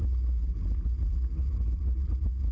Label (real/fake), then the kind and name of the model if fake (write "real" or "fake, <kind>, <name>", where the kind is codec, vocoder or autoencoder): real